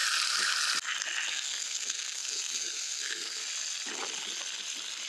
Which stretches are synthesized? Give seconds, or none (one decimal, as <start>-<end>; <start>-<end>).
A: 1.3-3.4